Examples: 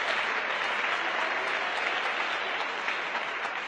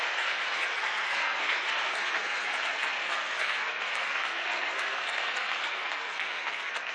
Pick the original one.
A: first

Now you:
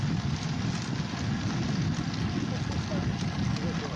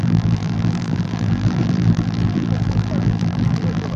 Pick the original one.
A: first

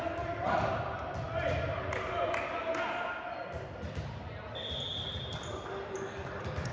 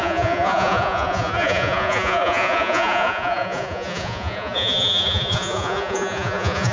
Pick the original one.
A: first